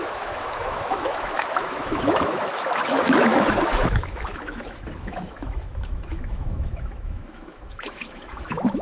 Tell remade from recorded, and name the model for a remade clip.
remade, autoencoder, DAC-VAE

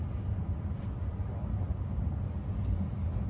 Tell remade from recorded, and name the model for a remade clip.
recorded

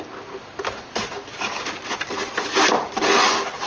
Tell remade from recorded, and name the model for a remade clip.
recorded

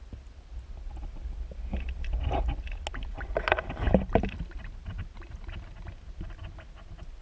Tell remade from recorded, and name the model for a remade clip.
recorded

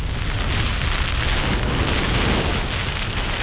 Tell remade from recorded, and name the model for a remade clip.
recorded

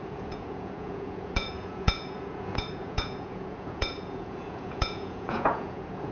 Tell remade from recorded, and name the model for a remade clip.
remade, vocoder, Vocos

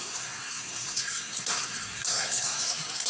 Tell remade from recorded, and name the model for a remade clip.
remade, codec, SNAC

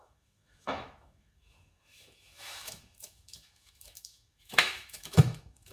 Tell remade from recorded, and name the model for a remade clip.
remade, autoencoder, DAC-VAE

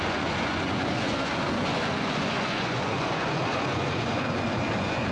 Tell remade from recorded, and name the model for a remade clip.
remade, vocoder, Vocos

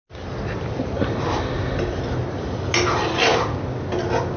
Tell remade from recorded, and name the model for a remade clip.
recorded